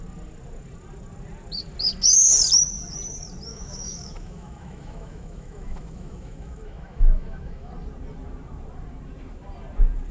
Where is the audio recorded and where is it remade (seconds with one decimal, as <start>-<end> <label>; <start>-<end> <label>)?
0.0-3.5 recorded; 3.5-7.7 remade; 7.7-10.1 recorded